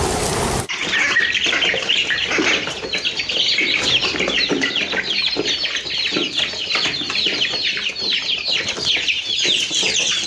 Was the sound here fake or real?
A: real